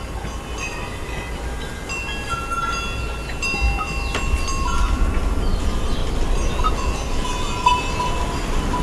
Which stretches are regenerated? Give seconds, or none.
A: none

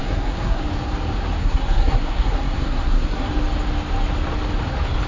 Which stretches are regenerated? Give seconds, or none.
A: 0.0-0.6 (codec, SNAC); 1.4-3.3

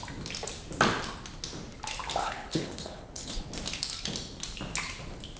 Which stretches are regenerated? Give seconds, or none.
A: 2.2-3.5 (codec, HILCodec)

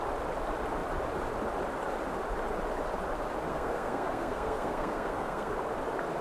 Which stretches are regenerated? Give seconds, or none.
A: 3.5-5.5 (codec, SNAC)

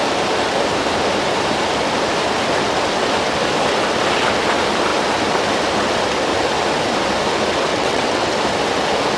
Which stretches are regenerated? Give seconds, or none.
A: 7.7-8.3 (vocoder, WaveNeXt)

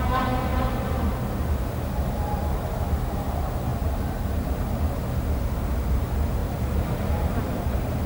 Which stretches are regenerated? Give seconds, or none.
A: 3.7-5.0 (vocoder, BigVGAN v2); 6.4-7.6